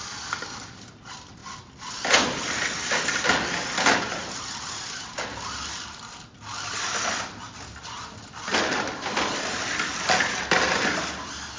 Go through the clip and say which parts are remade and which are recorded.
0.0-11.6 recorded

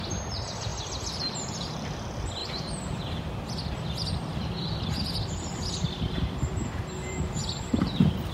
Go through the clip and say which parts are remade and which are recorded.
0.0-8.3 remade

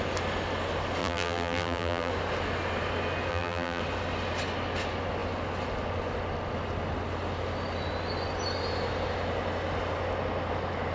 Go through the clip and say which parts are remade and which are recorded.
0.0-1.0 recorded; 1.0-2.1 remade; 2.1-3.3 recorded; 3.3-3.8 remade; 3.8-10.9 recorded

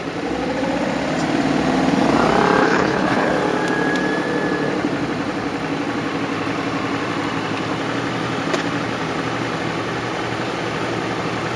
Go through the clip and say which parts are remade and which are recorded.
0.0-2.6 recorded; 2.6-3.3 remade; 3.3-11.6 recorded

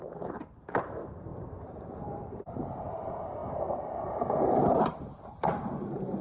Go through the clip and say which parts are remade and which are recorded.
0.0-6.2 remade

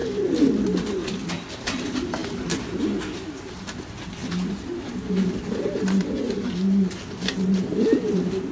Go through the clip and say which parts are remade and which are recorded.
0.0-8.5 recorded